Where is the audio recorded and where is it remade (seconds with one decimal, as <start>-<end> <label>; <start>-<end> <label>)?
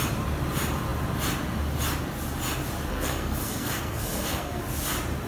0.0-2.9 recorded; 2.9-4.6 remade; 4.6-5.3 recorded